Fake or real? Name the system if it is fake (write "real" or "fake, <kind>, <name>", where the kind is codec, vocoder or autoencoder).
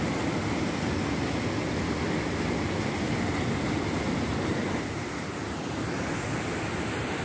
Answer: real